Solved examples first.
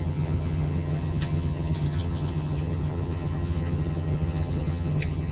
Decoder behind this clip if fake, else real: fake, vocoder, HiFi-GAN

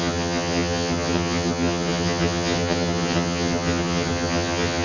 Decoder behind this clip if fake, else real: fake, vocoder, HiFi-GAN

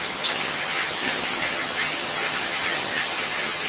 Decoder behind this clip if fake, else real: fake, vocoder, HiFi-GAN